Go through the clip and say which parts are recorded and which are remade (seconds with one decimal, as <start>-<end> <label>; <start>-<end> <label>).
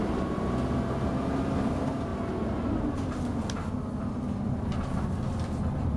0.0-6.0 recorded